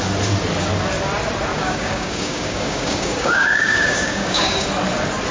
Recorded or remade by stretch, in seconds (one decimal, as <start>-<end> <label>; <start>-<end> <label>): 0.0-1.5 recorded; 1.5-4.7 remade; 4.7-5.3 recorded